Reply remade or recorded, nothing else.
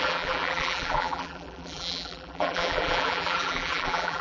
remade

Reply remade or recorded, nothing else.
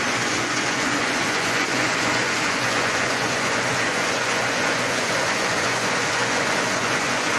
remade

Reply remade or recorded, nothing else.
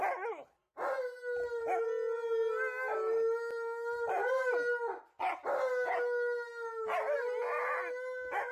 recorded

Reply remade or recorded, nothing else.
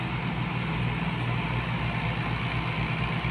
recorded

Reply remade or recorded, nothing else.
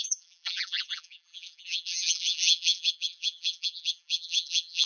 remade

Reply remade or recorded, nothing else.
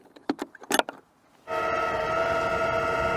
recorded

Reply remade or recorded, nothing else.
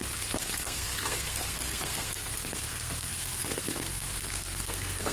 remade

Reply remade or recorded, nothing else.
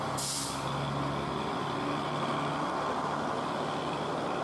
recorded